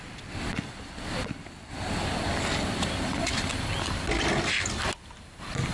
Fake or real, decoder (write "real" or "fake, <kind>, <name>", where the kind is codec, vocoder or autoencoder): real